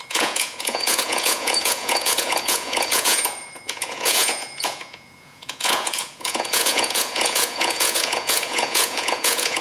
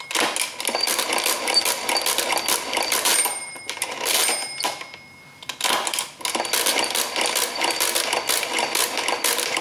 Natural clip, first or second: second